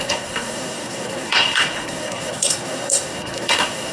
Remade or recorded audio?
remade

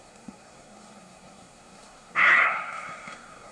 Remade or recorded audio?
remade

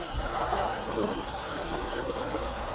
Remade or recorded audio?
remade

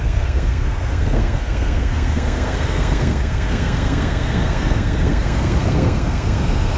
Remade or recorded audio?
remade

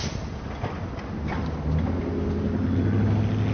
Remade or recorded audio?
recorded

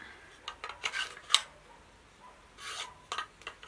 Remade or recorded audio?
recorded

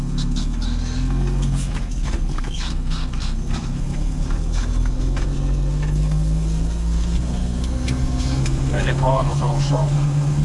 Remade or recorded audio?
remade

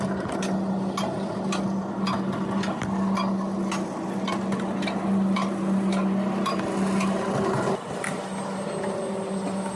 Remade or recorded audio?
recorded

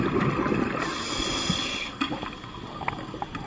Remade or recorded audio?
recorded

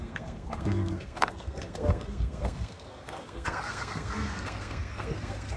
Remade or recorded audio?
remade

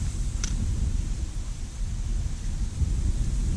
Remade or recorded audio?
recorded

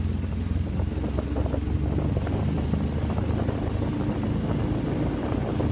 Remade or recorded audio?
recorded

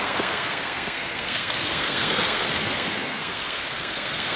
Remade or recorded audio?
remade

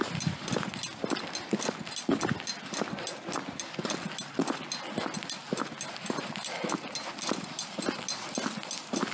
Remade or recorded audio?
recorded